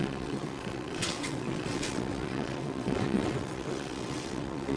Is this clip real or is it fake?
fake